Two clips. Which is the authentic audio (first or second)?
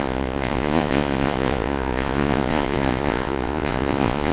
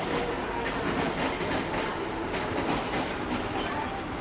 second